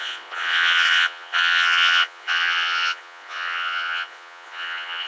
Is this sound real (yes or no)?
no